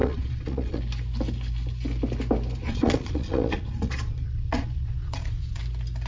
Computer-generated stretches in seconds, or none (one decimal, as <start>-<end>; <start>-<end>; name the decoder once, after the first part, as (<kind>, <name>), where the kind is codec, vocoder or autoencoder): 0.0-0.8 (vocoder, Vocos); 2.6-5.6